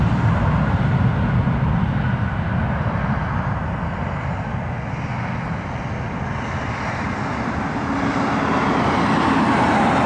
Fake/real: real